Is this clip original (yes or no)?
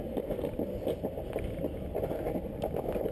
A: yes